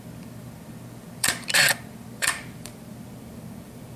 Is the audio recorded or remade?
remade